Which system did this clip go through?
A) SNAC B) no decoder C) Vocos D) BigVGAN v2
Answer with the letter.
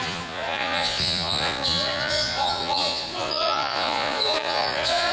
C